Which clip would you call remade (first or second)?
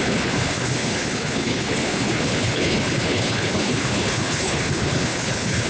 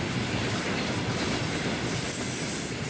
first